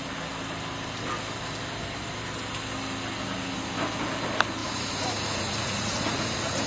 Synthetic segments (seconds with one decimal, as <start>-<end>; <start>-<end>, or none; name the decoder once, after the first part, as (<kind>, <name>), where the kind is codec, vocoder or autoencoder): 4.6-6.7 (vocoder, Vocos)